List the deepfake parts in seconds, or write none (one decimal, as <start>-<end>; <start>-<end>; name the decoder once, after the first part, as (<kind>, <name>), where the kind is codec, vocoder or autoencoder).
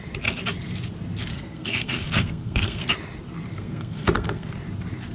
1.3-2.9 (codec, SNAC); 3.5-4.5